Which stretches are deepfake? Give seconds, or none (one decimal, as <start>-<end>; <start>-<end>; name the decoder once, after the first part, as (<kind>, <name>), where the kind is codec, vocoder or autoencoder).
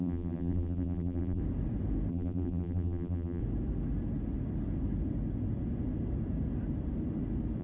0.0-1.4 (vocoder, BigVGAN v2); 2.1-3.4